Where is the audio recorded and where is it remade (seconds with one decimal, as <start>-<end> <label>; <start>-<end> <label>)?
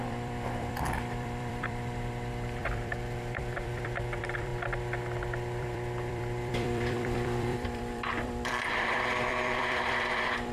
0.0-4.5 remade; 4.5-5.6 recorded; 5.6-10.5 remade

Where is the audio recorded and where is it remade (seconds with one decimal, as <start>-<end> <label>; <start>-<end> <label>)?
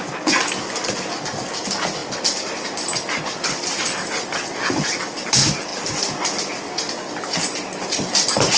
0.0-8.6 recorded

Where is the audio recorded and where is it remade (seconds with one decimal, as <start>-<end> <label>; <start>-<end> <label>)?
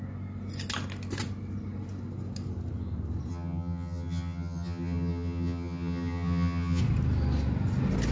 0.0-3.3 recorded; 3.3-6.8 remade; 6.8-8.1 recorded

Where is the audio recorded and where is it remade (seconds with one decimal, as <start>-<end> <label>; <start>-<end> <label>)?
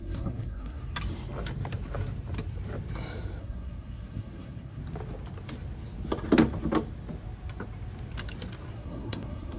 0.0-0.8 remade; 0.8-3.4 recorded; 3.4-4.8 remade; 4.8-8.7 recorded; 8.7-9.6 remade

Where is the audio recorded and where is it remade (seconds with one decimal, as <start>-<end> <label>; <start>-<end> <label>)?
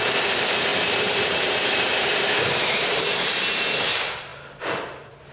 0.0-0.7 recorded; 0.7-3.9 remade; 3.9-5.3 recorded